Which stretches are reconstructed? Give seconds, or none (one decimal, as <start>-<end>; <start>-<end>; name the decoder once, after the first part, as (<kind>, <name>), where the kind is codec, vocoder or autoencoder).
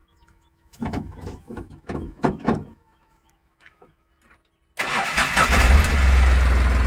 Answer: 0.0-4.1 (autoencoder, DAC-VAE)